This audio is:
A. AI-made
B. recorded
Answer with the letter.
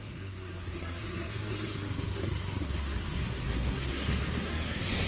A